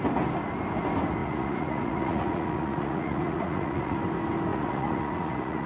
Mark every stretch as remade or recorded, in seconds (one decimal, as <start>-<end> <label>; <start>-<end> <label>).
0.0-1.2 recorded; 1.2-4.0 remade; 4.0-4.5 recorded; 4.5-5.7 remade